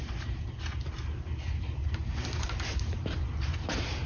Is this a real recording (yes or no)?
yes